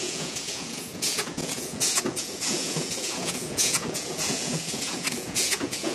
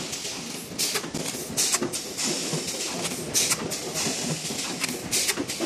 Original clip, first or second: second